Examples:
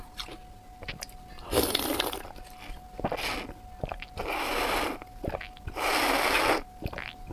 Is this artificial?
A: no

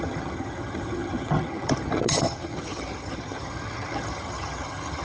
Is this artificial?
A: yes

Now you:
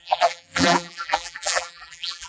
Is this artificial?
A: yes